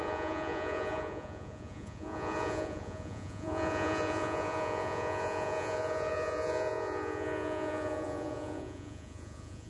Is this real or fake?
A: fake